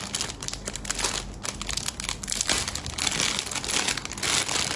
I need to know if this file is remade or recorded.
recorded